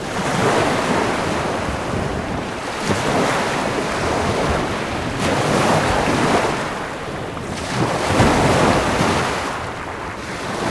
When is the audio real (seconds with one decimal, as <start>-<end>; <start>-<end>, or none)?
0.0-2.1; 2.6-10.7